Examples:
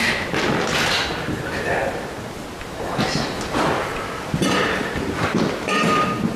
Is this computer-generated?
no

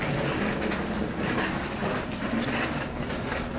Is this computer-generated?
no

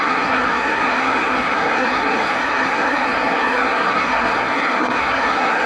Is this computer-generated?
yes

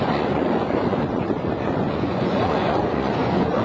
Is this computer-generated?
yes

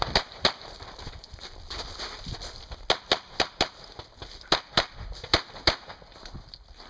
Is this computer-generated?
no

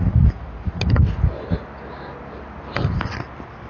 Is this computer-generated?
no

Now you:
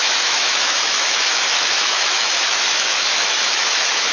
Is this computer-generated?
yes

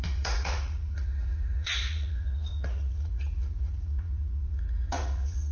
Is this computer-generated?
yes